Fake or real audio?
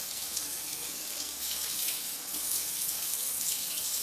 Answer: fake